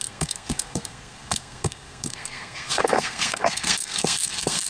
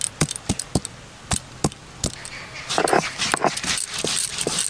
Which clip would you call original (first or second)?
second